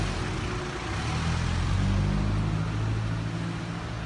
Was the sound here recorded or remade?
recorded